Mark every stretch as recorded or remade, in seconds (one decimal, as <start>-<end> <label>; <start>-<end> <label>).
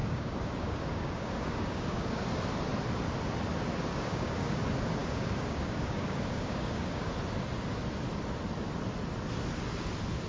0.0-2.2 remade; 2.2-3.9 recorded; 3.9-4.6 remade; 4.6-5.0 recorded; 5.0-7.1 remade; 7.1-10.3 recorded